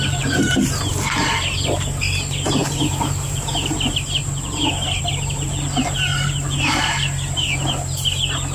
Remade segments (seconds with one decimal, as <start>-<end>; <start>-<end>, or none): 2.6-5.0; 6.1-7.7